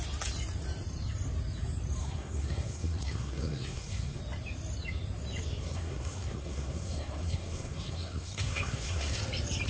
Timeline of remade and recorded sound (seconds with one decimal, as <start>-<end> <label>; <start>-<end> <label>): 0.0-2.0 recorded; 2.0-4.2 remade; 4.2-5.6 recorded; 5.6-9.2 remade; 9.2-9.7 recorded